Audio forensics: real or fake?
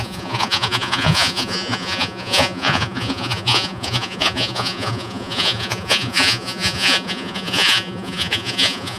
fake